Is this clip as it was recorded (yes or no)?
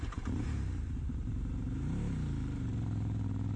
no